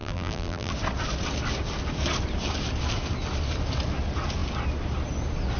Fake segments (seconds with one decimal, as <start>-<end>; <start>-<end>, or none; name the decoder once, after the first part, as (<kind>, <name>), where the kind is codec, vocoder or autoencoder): 0.0-0.7 (vocoder, BigVGAN v2)